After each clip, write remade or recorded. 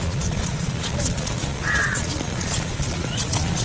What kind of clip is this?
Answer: remade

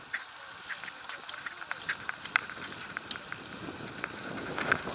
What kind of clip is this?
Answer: recorded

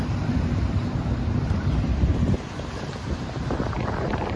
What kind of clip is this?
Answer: remade